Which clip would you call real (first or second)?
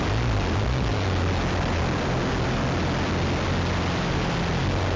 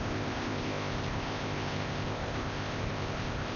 first